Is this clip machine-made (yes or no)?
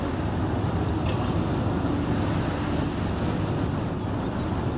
no